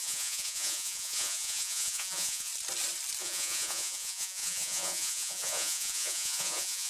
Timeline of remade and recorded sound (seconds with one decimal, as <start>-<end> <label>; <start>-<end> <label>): 0.0-2.5 remade; 2.5-3.2 recorded; 3.2-6.9 remade